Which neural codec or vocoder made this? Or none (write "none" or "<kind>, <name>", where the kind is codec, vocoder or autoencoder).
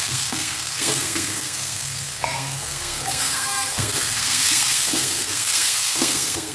codec, SNAC